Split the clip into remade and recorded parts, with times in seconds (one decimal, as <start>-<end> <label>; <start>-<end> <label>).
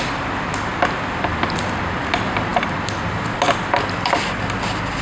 0.0-5.0 recorded